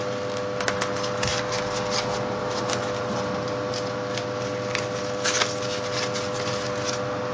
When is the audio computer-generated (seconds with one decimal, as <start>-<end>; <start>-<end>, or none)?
none